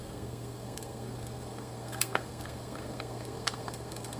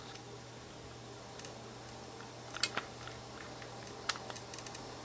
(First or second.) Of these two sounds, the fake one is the first